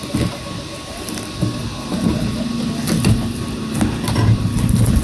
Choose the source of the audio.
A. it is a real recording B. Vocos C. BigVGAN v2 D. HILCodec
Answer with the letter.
A